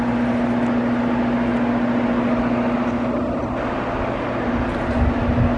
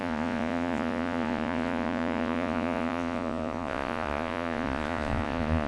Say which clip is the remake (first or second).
second